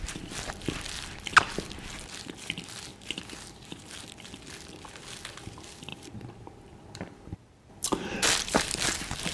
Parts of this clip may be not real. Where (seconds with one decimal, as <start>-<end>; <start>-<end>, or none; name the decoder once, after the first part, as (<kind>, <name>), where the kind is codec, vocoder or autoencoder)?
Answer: 5.9-8.8 (vocoder, BigVGAN v2)